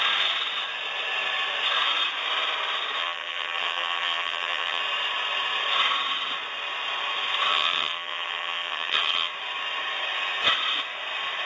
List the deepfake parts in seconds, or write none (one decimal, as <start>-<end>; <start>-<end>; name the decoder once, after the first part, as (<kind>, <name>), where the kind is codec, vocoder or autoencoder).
3.0-4.8 (vocoder, HiFi-GAN); 7.5-9.3